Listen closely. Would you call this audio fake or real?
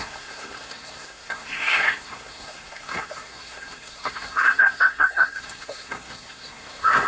fake